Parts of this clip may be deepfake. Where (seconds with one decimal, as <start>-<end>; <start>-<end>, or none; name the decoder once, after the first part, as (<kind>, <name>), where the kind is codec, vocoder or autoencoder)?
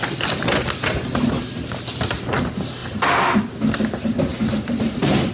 2.8-3.4 (vocoder, BigVGAN v2); 4.3-5.3